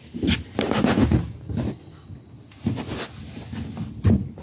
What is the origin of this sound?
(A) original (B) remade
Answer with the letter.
A